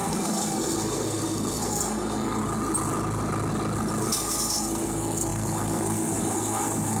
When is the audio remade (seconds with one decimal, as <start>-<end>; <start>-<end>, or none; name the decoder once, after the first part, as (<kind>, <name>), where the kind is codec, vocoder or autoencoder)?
0.0-2.4 (codec, SNAC); 4.0-7.0